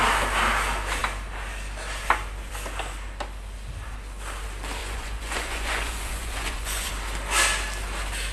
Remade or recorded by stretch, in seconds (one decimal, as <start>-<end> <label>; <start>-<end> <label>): 0.0-4.8 recorded; 4.8-6.9 remade; 6.9-8.3 recorded